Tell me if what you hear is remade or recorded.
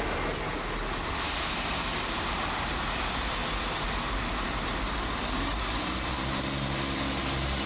recorded